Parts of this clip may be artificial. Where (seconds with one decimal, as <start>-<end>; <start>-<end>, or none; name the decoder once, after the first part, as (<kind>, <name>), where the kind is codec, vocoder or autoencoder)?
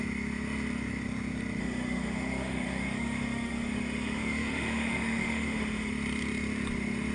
1.6-5.9 (autoencoder, DAC-VAE)